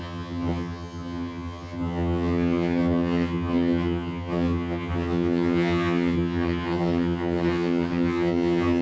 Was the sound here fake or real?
fake